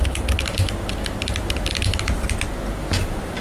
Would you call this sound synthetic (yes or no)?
no